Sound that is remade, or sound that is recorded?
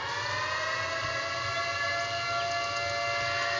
recorded